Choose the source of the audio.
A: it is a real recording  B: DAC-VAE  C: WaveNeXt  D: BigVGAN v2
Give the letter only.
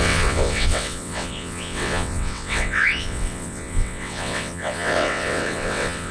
C